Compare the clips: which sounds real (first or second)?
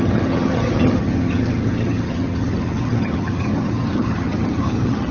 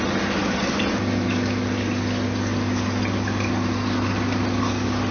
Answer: second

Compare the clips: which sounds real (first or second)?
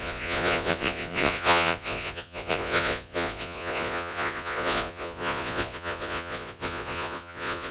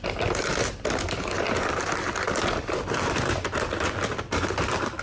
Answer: second